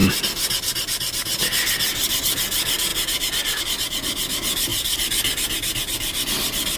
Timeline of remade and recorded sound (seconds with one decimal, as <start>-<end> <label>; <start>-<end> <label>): 0.0-2.9 recorded; 2.9-3.6 remade; 3.6-6.8 recorded